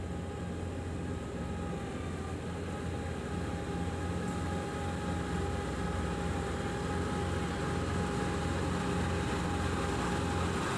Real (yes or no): yes